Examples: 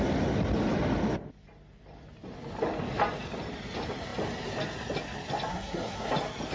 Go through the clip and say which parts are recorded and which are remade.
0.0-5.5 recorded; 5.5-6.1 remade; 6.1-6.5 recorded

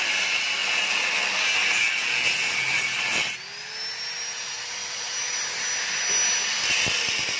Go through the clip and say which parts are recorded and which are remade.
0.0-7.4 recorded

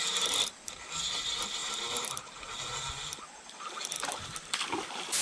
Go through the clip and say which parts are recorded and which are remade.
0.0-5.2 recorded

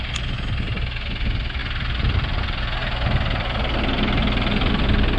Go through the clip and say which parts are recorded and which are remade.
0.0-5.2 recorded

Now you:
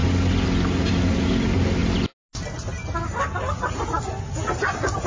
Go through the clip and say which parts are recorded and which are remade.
0.0-5.1 recorded

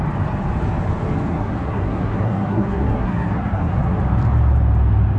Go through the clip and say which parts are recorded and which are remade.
0.0-1.3 recorded; 1.3-4.0 remade; 4.0-5.2 recorded